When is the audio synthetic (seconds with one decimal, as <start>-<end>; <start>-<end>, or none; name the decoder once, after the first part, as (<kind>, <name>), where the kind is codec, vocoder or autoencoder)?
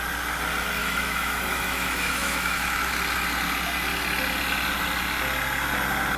0.8-2.9 (autoencoder, DAC-VAE)